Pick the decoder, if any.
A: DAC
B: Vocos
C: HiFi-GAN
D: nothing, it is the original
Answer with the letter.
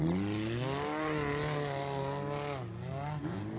D